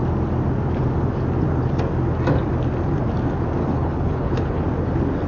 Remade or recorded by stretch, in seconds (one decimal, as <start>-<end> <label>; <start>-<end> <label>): 0.0-3.6 recorded; 3.6-4.6 remade; 4.6-5.3 recorded